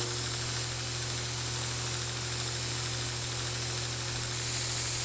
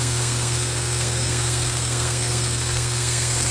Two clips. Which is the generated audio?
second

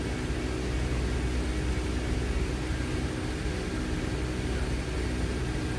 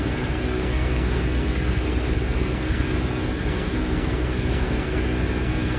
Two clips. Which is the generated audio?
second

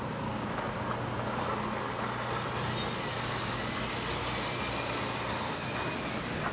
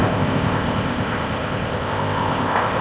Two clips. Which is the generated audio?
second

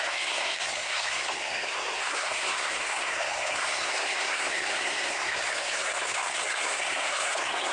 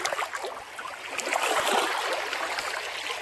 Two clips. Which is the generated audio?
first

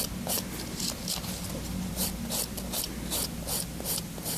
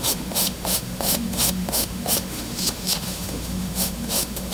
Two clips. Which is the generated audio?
second